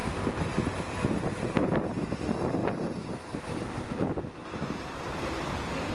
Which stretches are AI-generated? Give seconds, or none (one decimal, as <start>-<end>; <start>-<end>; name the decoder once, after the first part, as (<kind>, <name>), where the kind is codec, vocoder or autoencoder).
2.6-3.5 (vocoder, BigVGAN v2); 4.4-5.9